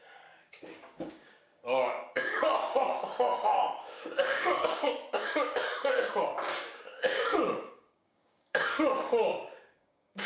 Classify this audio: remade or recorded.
remade